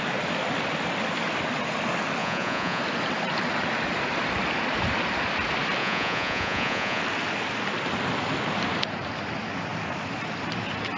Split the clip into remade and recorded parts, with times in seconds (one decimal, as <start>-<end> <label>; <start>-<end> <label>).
0.0-2.2 recorded; 2.2-2.8 remade; 2.8-5.8 recorded; 5.8-7.0 remade; 7.0-11.0 recorded